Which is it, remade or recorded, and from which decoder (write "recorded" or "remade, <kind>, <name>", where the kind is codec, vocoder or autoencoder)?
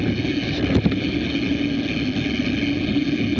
recorded